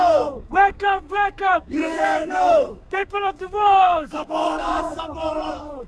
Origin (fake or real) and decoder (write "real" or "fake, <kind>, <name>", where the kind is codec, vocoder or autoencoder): fake, codec, SNAC